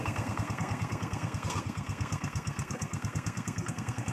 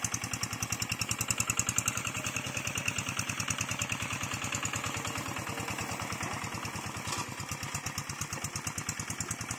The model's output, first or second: first